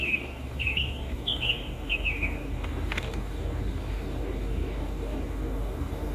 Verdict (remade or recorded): remade